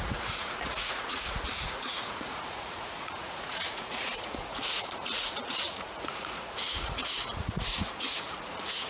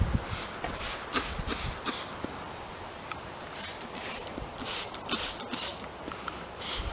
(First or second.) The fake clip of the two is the first